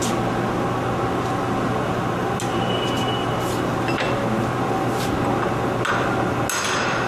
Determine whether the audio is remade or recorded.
recorded